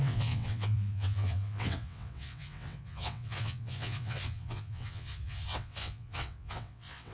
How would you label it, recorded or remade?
remade